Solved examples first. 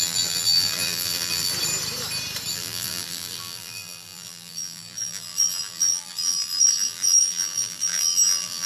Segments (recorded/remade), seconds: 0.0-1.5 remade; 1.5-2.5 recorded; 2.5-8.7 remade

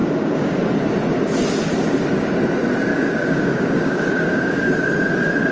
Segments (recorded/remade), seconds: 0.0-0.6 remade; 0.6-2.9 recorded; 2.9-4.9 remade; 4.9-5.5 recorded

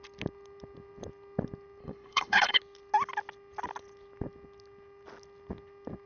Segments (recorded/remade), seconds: 0.0-1.8 recorded; 1.8-2.6 remade; 2.6-6.1 recorded

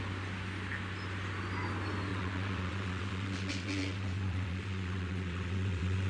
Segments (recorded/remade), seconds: 0.0-2.1 recorded; 2.1-6.1 remade

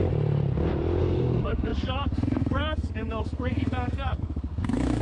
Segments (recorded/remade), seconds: 0.0-1.0 recorded; 1.0-5.0 remade